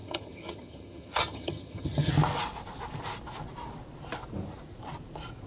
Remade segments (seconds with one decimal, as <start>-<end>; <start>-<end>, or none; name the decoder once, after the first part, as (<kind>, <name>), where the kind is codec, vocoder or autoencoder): 0.0-2.1 (vocoder, HiFi-GAN)